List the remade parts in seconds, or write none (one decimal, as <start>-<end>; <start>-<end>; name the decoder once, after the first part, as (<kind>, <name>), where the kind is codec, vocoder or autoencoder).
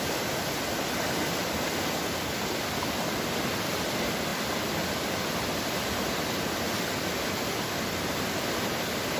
0.0-9.2 (vocoder, BigVGAN v2)